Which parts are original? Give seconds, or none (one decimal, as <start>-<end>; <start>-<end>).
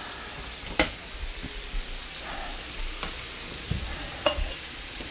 0.0-3.9